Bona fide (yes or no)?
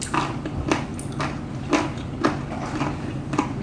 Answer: yes